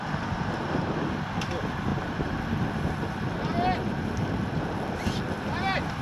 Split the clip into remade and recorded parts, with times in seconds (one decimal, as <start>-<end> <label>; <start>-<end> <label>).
0.0-6.0 recorded